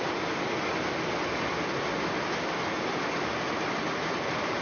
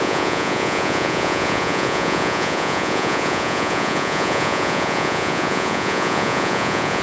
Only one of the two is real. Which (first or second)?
first